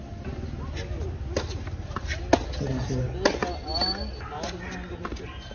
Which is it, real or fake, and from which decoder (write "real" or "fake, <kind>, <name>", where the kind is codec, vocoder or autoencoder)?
real